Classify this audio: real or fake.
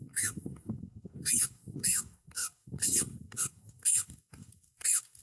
fake